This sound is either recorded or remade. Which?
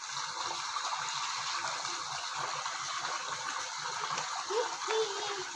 recorded